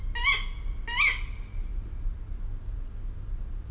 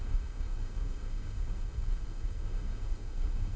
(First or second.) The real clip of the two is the first